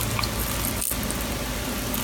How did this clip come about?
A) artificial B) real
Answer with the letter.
B